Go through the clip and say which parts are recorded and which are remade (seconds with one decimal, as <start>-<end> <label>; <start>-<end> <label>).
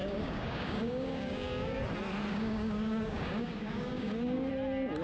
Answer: 0.0-1.8 remade; 1.8-2.3 recorded; 2.3-4.5 remade; 4.5-5.0 recorded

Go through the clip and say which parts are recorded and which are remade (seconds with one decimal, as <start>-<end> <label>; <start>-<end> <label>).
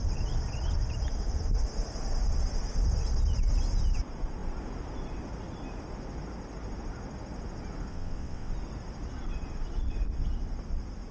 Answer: 0.0-7.9 recorded; 7.9-8.5 remade; 8.5-11.1 recorded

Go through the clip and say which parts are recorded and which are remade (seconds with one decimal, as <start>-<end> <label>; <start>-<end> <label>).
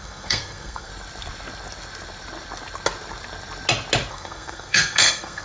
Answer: 0.0-0.9 remade; 0.9-4.1 recorded; 4.1-5.4 remade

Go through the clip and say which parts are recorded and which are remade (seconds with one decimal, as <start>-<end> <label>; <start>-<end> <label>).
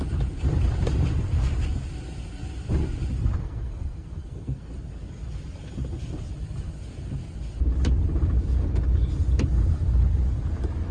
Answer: 0.0-3.4 recorded; 3.4-4.7 remade; 4.7-10.9 recorded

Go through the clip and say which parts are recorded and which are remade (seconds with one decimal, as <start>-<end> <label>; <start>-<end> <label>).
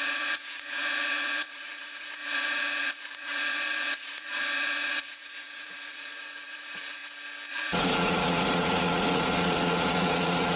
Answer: 0.0-7.0 remade; 7.0-7.5 recorded; 7.5-10.6 remade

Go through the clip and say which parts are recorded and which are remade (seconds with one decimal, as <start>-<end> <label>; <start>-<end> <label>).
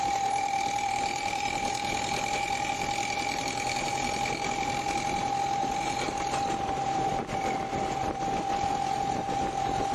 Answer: 0.0-7.1 remade; 7.1-8.0 recorded; 8.0-9.9 remade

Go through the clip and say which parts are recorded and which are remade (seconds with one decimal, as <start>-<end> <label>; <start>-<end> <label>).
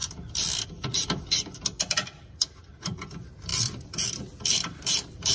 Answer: 0.0-2.8 remade; 2.8-3.5 recorded; 3.5-5.3 remade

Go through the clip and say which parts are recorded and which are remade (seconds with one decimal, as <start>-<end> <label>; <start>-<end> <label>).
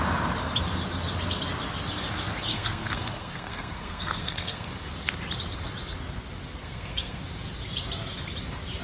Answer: 0.0-2.5 recorded; 2.5-4.7 remade; 4.7-6.6 recorded; 6.6-7.2 remade; 7.2-8.8 recorded